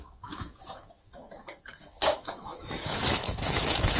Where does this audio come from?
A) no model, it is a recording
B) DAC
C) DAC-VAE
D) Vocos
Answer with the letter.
C